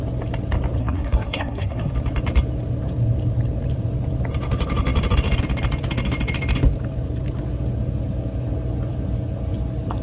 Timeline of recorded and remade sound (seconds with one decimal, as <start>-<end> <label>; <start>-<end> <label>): 0.0-0.8 recorded; 0.8-1.9 remade; 1.9-10.0 recorded

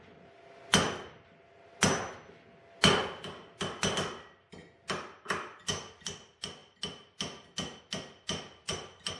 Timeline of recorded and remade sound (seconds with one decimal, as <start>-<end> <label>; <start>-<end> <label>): 0.0-9.2 recorded

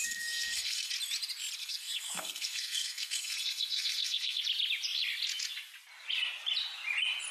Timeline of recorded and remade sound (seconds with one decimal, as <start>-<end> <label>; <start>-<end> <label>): 0.0-0.9 remade; 0.9-1.6 recorded; 1.6-4.4 remade; 4.4-7.3 recorded

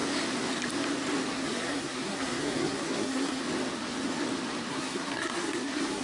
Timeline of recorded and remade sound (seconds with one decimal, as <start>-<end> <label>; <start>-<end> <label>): 0.0-1.3 recorded; 1.3-3.4 remade; 3.4-4.7 recorded; 4.7-6.0 remade